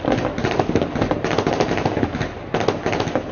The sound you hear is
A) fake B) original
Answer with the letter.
B